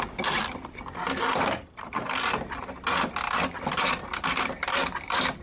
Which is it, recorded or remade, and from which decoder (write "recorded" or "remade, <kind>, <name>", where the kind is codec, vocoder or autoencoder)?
recorded